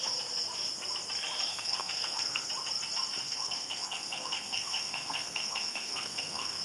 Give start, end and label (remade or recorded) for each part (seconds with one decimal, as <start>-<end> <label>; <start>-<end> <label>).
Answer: 0.0-1.5 recorded; 1.5-2.5 remade; 2.5-3.2 recorded; 3.2-6.6 remade